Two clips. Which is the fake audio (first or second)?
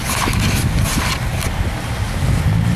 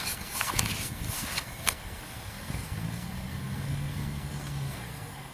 second